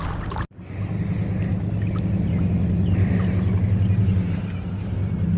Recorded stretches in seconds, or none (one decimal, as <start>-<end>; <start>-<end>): 0.0-1.5; 3.6-4.0; 4.9-5.4